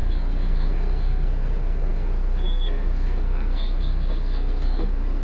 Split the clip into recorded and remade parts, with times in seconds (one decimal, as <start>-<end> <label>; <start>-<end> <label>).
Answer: 0.0-5.2 remade